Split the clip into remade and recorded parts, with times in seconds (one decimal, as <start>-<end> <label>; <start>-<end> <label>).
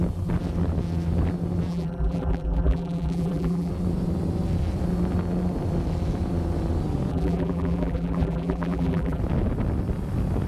0.0-1.7 recorded; 1.7-3.7 remade; 3.7-7.1 recorded; 7.1-9.2 remade; 9.2-10.5 recorded